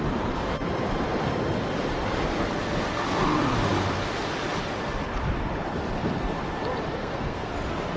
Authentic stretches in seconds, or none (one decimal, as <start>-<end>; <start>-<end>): 0.0-7.0; 7.5-8.0